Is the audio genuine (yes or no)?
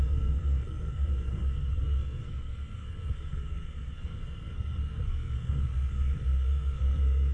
no